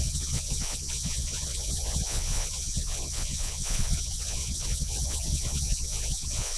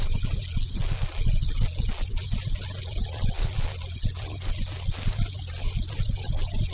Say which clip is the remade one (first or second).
first